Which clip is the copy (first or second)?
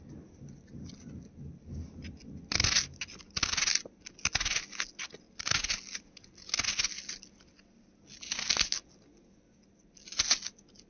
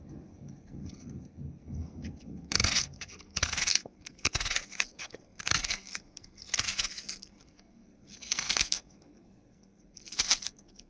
second